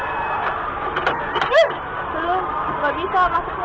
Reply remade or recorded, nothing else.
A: recorded